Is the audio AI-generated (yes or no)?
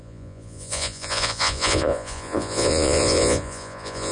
yes